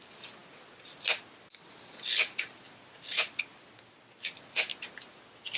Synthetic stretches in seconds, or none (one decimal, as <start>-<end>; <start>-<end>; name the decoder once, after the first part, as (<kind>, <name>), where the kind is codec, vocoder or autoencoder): none